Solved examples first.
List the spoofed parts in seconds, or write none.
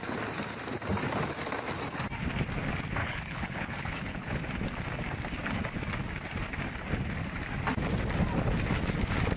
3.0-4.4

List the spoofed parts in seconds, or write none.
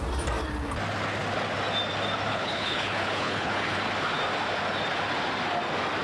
2.3-3.8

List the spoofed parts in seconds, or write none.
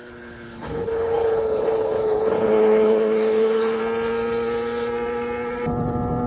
0.0-3.8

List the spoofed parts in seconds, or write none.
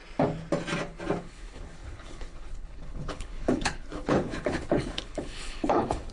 1.2-6.1